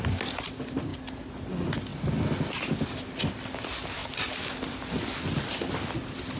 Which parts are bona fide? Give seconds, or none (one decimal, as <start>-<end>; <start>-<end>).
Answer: 0.0-6.4